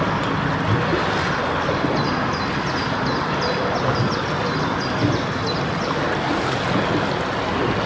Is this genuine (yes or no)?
yes